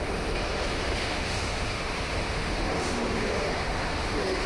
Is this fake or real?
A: fake